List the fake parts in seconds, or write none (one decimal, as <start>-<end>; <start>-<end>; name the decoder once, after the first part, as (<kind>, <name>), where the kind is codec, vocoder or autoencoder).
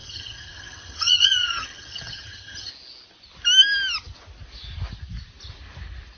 0.0-2.7 (vocoder, HiFi-GAN)